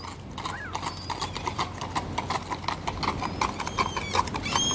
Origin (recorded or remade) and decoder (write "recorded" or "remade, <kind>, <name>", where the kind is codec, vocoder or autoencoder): recorded